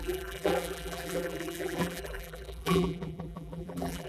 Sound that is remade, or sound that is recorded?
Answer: remade